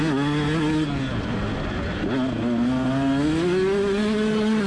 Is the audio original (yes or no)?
yes